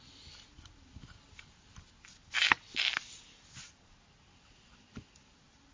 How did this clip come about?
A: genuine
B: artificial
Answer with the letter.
A